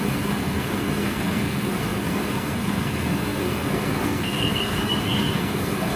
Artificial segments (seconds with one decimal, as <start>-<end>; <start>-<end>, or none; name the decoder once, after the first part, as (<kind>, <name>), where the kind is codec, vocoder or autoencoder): 0.0-6.0 (codec, SNAC)